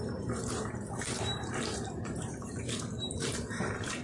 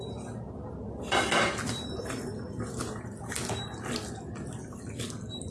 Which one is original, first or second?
second